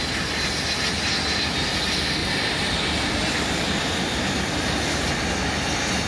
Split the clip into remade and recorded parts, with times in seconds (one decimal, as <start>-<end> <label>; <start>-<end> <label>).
0.0-2.2 recorded; 2.2-5.3 remade; 5.3-6.1 recorded